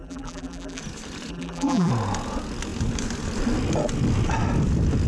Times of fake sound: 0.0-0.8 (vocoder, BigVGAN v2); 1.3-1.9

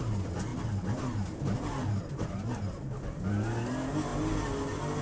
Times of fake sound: none

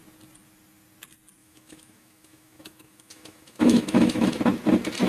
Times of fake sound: 1.4-4.3 (autoencoder, DAC-VAE)